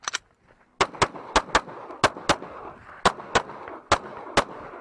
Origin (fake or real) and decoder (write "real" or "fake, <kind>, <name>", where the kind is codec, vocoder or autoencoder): real